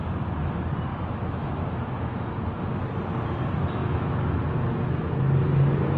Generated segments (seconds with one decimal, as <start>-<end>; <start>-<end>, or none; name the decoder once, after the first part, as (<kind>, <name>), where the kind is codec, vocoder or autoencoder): 0.9-2.8 (autoencoder, DAC-VAE); 3.8-4.4